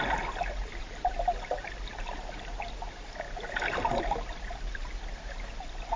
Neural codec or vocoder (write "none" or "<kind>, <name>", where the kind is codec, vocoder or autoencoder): none